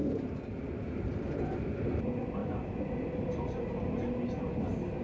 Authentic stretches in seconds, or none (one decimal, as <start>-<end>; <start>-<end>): 0.6-2.4; 3.3-5.0